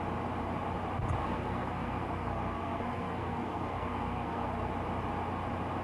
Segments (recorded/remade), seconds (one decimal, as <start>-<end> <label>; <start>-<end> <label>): 0.0-1.2 recorded; 1.2-4.7 remade; 4.7-5.8 recorded